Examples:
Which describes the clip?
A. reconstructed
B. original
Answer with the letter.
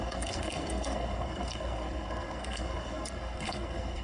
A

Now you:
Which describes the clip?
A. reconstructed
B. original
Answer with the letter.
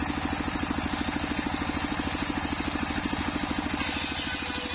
B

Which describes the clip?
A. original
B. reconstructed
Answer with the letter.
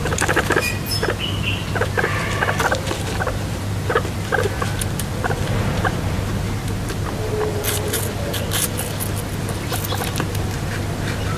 A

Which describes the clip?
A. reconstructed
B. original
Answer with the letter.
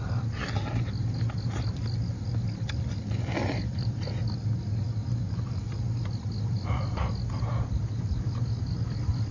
B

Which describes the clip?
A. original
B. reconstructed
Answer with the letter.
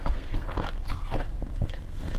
B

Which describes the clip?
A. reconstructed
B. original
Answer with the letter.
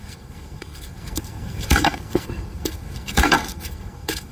A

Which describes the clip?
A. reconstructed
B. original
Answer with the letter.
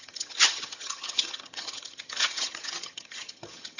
A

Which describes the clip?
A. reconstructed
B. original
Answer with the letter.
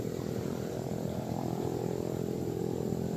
A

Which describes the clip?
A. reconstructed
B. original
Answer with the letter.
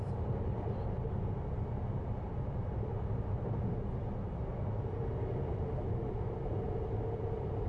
B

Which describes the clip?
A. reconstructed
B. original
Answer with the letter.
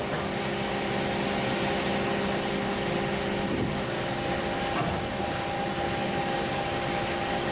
B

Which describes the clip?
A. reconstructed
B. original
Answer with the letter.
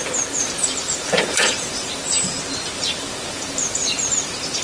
A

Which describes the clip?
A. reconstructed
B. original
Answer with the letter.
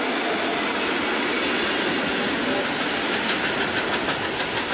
B